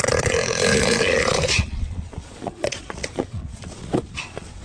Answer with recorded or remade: remade